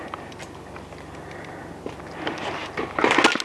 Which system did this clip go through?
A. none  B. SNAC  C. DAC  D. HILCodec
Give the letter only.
A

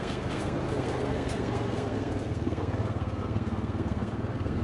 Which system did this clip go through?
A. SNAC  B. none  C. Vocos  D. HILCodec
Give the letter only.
A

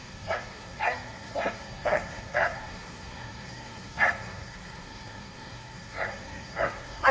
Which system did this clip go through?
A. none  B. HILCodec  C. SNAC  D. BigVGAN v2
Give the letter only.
C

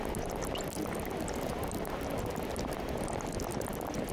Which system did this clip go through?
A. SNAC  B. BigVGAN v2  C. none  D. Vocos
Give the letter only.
C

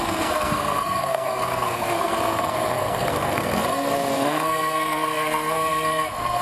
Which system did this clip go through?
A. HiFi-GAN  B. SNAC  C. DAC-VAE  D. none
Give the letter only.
B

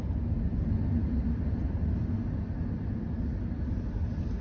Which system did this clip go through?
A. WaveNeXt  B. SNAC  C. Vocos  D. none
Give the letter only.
D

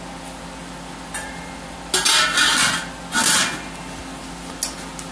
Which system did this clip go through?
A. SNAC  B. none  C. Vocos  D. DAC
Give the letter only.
B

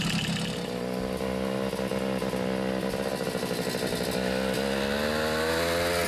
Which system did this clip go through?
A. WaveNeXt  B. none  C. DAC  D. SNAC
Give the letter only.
B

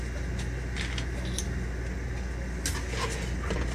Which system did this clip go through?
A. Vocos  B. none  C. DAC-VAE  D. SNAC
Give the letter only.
B